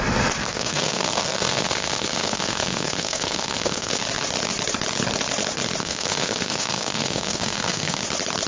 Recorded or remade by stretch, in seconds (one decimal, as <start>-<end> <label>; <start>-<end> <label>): 0.0-0.4 recorded; 0.4-4.0 remade; 4.0-5.8 recorded; 5.8-8.0 remade; 8.0-8.5 recorded

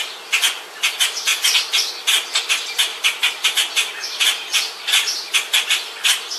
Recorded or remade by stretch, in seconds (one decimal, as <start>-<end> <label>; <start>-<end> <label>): 0.0-1.3 recorded; 1.3-1.9 remade; 1.9-2.9 recorded; 2.9-6.4 remade

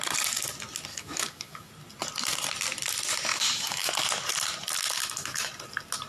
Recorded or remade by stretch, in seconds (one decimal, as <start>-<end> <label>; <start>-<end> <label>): 0.0-0.9 recorded; 0.9-1.7 remade; 1.7-3.3 recorded; 3.3-3.9 remade; 3.9-5.0 recorded; 5.0-5.5 remade; 5.5-6.1 recorded

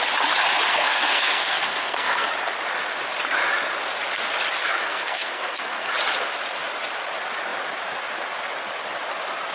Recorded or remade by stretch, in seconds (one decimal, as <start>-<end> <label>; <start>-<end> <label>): 0.0-0.7 recorded; 0.7-2.3 remade; 2.3-4.6 recorded; 4.6-5.9 remade; 5.9-9.5 recorded

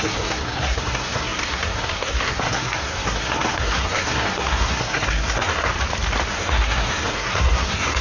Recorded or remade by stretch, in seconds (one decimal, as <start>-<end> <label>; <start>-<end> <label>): 0.0-5.7 remade; 5.7-6.3 recorded; 6.3-8.0 remade